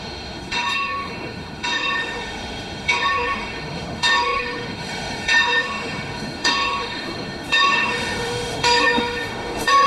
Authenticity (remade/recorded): remade